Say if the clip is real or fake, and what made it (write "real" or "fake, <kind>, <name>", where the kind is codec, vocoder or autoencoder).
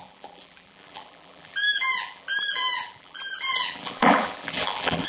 fake, vocoder, BigVGAN v2